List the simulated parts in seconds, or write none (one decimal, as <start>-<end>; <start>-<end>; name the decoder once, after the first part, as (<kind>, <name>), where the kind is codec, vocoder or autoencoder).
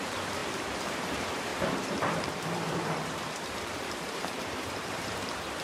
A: 0.0-5.6 (vocoder, BigVGAN v2)